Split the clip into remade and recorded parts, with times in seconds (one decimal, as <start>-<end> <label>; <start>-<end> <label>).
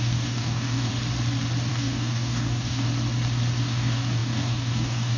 0.0-0.9 remade; 0.9-1.7 recorded; 1.7-2.9 remade; 2.9-3.6 recorded; 3.6-5.2 remade